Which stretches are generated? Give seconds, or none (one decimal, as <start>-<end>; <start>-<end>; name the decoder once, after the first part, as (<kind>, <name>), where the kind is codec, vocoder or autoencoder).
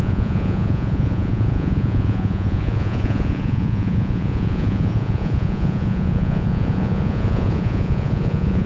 0.0-8.7 (vocoder, Vocos)